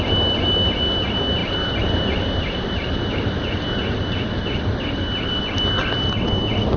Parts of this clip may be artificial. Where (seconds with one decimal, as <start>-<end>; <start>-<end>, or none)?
1.4-5.4